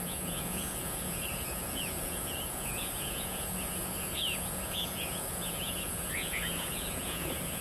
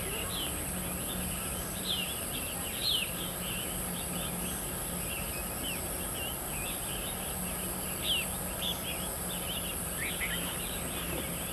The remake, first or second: first